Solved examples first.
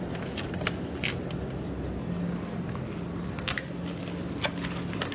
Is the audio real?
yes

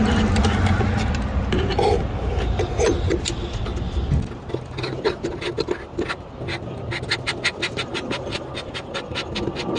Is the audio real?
yes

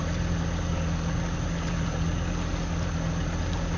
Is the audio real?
yes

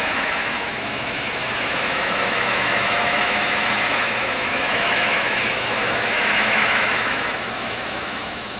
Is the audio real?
no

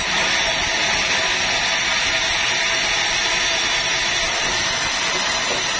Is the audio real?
yes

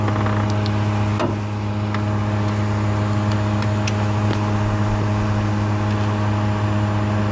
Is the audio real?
yes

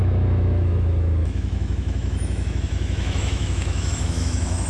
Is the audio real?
no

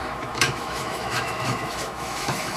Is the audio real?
no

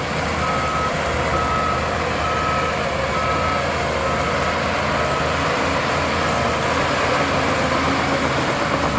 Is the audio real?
yes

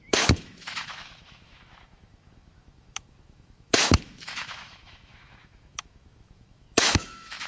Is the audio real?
no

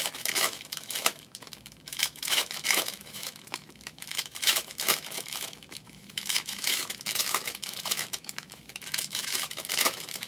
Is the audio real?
no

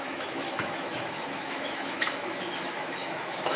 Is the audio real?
no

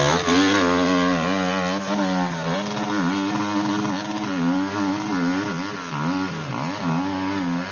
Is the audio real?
yes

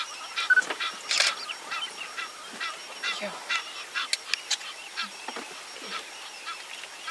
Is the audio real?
yes